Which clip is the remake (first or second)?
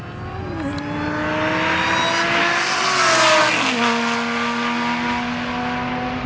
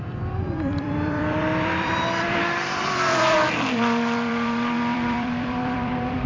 second